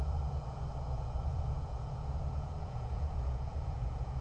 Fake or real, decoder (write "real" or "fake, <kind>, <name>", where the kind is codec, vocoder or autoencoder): fake, vocoder, Vocos